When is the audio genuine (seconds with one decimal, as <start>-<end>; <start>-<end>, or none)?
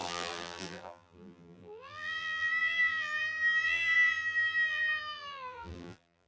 none